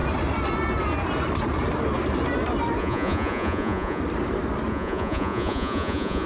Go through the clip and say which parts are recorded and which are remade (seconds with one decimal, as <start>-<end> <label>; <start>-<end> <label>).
0.0-2.8 recorded; 2.8-4.0 remade; 4.0-4.7 recorded; 4.7-6.3 remade